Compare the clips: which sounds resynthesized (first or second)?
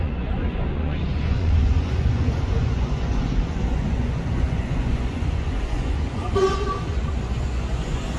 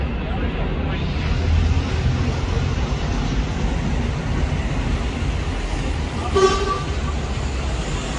first